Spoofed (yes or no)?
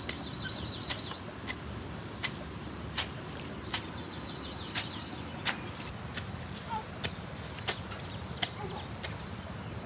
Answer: no